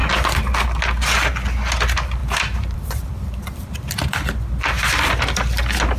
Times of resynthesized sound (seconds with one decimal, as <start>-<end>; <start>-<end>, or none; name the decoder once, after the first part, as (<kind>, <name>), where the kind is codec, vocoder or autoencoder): 2.2-5.3 (vocoder, BigVGAN v2)